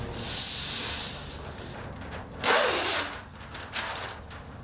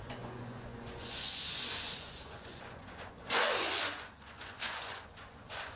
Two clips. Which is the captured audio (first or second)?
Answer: first